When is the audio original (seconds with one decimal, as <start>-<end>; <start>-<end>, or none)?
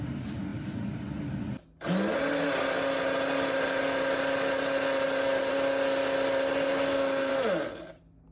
0.0-6.7; 7.3-8.3